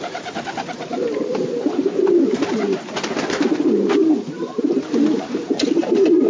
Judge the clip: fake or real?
fake